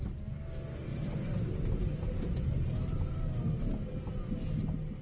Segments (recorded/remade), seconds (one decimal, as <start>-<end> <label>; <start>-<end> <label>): 0.0-0.9 recorded; 0.9-3.9 remade; 3.9-5.0 recorded